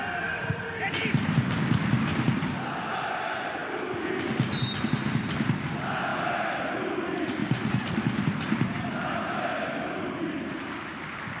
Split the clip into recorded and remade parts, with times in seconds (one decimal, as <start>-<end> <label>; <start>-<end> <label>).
0.0-3.6 remade; 3.6-4.8 recorded; 4.8-11.4 remade

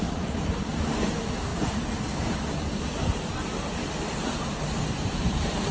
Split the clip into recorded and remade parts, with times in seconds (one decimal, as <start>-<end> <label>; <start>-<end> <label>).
0.0-3.8 remade; 3.8-4.8 recorded; 4.8-5.7 remade

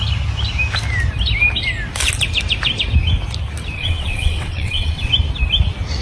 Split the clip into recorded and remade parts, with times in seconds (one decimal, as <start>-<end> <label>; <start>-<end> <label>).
0.0-3.8 recorded; 3.8-5.1 remade; 5.1-6.0 recorded

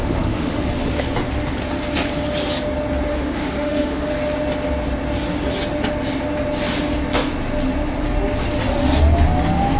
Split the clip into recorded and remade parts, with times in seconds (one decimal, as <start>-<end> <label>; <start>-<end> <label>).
0.0-0.6 remade; 0.6-3.1 recorded; 3.1-4.1 remade; 4.1-9.8 recorded

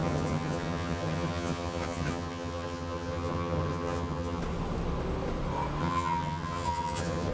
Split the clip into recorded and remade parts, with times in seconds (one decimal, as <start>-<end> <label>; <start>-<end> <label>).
0.0-4.4 remade; 4.4-5.8 recorded; 5.8-7.3 remade

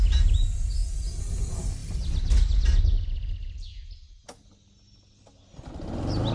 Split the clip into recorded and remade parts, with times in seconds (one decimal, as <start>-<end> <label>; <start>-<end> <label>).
0.0-6.3 recorded

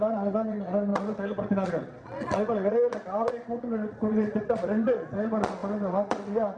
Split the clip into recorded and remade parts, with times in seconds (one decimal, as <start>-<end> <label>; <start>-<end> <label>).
0.0-6.6 remade

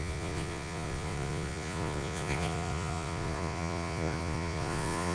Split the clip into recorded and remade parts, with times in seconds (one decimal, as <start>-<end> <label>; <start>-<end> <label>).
0.0-5.1 remade